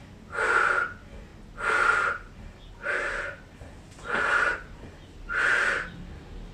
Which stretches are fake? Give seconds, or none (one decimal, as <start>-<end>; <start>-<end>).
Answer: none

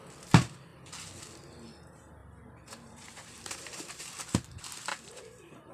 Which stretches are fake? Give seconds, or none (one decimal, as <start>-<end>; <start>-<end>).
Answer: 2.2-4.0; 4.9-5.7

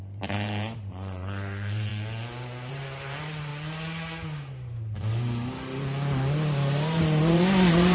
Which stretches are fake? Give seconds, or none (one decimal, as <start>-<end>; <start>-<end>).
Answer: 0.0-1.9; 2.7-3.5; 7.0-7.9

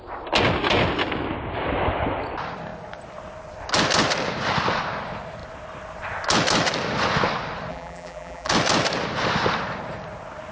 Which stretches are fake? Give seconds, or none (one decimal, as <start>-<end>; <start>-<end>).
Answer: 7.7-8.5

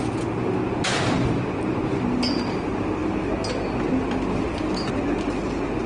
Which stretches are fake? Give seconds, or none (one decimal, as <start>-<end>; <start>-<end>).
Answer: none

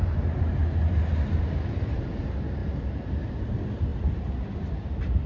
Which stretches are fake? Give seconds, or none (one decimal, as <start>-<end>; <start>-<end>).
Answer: 0.6-1.8; 3.9-5.3

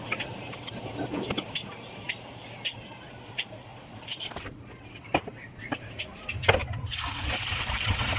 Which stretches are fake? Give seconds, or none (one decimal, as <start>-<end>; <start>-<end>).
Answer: 3.7-4.6